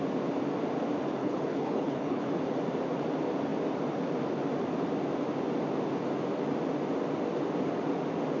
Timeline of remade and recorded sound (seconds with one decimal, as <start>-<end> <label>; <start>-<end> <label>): 0.0-1.2 recorded; 1.2-2.3 remade; 2.3-8.4 recorded